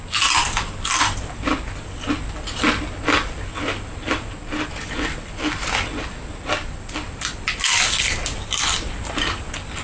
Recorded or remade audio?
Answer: recorded